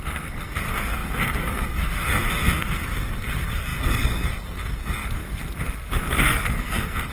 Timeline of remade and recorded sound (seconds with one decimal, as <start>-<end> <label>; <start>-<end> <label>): 0.0-7.1 remade